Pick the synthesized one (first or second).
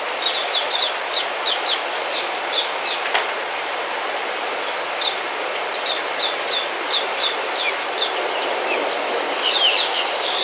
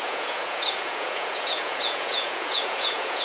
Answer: second